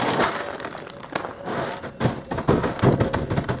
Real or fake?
real